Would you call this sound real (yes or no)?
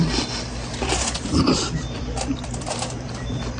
no